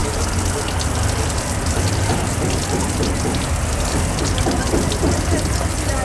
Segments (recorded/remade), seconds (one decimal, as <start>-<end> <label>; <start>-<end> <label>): 0.0-6.0 recorded